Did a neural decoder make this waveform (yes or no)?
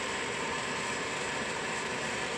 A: yes